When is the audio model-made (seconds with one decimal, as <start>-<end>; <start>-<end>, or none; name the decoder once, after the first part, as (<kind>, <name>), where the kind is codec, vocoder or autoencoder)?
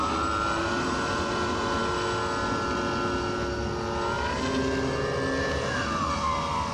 0.0-1.8 (vocoder, BigVGAN v2); 5.4-6.7